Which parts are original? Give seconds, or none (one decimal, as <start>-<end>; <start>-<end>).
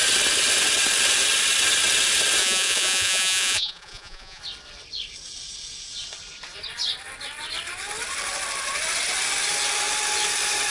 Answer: 0.0-2.4; 4.4-10.7